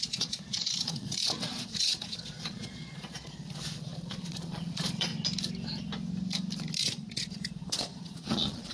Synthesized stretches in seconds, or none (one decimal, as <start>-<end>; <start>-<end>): 0.0-5.1; 6.8-8.7